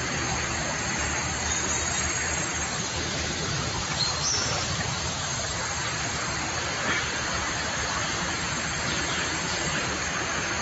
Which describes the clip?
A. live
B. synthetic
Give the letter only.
B